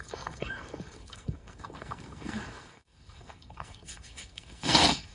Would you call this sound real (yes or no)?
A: no